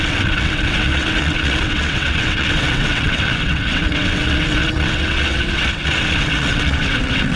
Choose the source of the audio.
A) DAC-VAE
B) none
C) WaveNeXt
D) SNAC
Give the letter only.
C